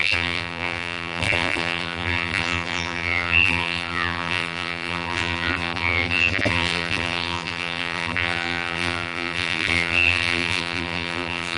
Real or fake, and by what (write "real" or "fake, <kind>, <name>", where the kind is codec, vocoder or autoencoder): fake, vocoder, BigVGAN v2